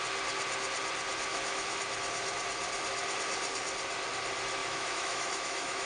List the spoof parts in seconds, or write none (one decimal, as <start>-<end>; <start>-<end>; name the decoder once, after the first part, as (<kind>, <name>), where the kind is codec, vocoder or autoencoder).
1.3-1.8 (autoencoder, DAC-VAE); 4.6-5.9